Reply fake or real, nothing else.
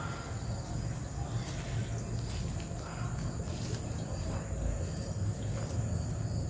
real